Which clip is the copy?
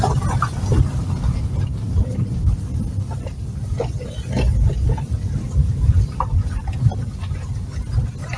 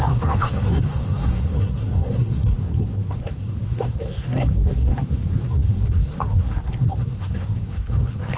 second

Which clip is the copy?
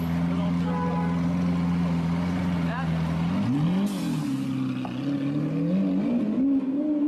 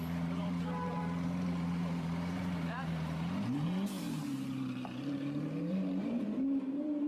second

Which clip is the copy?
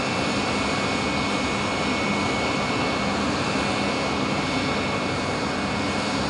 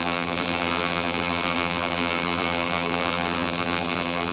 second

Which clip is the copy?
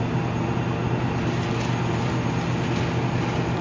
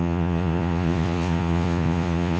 second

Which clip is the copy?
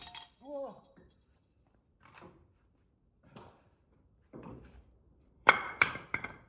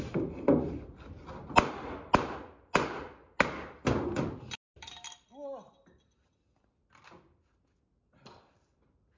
first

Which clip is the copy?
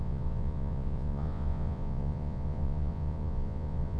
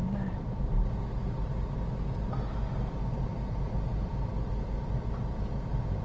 first